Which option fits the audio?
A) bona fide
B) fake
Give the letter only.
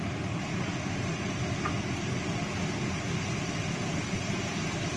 A